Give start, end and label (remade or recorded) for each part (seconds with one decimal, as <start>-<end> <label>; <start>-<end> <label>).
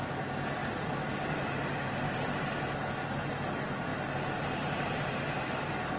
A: 0.0-0.6 recorded; 0.6-2.6 remade; 2.6-3.9 recorded; 3.9-6.0 remade